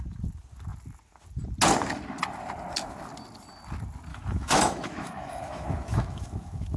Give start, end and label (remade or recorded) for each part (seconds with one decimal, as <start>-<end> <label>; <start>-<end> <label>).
0.0-4.1 recorded; 4.1-6.8 remade